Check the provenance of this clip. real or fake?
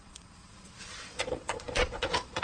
fake